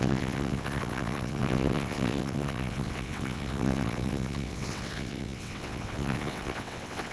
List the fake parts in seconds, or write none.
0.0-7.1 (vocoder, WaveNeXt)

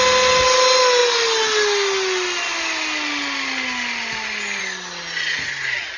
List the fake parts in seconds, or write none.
none

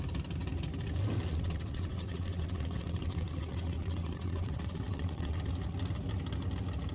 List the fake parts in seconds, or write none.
1.3-5.4 (vocoder, WaveNeXt)

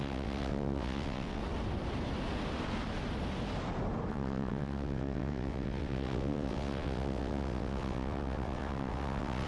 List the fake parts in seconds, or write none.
0.0-1.4 (vocoder, WaveNeXt); 4.1-9.5

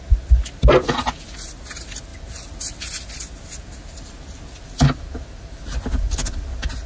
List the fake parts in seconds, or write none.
none